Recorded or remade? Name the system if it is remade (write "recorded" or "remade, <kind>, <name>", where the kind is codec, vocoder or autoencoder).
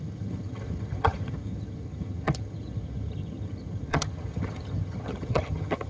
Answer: remade, vocoder, HiFi-GAN